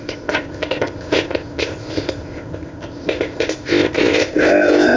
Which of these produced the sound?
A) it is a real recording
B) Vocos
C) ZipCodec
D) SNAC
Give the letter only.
C